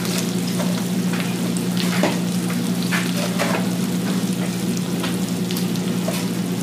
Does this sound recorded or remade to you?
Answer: recorded